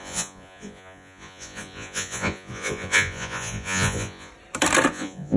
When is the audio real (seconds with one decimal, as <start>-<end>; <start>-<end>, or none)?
4.3-4.9